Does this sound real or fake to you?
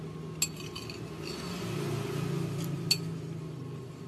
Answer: real